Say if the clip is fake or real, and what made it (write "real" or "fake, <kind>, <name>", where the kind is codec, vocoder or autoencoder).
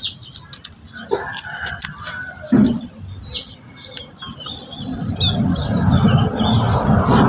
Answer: real